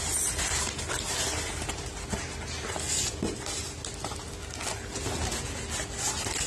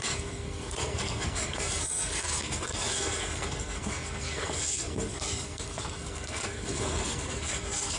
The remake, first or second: second